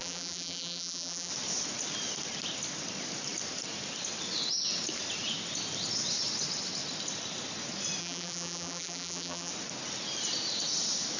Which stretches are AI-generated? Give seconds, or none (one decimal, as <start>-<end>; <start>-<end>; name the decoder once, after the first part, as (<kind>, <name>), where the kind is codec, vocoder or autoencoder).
0.0-1.3 (vocoder, BigVGAN v2); 8.0-9.5